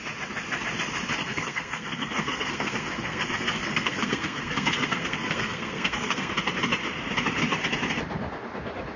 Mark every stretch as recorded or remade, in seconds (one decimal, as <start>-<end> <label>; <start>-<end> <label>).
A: 0.0-1.2 recorded; 1.2-6.3 remade; 6.3-9.0 recorded